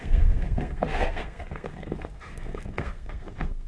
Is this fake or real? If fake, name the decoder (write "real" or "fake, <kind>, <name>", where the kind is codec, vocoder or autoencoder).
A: fake, codec, SNAC